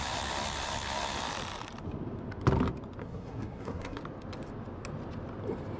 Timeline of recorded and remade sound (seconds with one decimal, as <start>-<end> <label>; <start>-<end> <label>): 0.0-3.0 recorded; 3.0-4.0 remade; 4.0-5.8 recorded